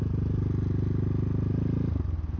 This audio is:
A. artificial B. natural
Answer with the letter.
B